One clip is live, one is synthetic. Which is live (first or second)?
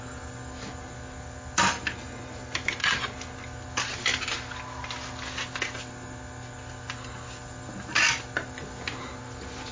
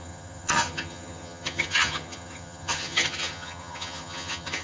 first